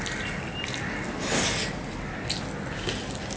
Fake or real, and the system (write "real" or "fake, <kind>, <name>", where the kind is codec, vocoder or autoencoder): real